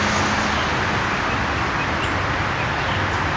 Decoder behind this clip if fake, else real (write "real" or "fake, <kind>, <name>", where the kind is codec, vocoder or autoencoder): real